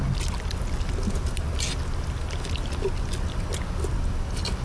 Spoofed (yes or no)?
no